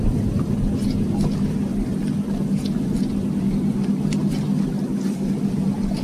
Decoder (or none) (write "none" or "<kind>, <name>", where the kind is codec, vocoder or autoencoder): none